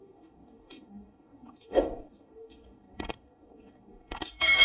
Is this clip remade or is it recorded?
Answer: remade